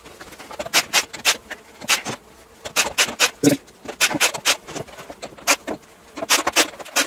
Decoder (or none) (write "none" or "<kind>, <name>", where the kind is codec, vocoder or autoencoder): none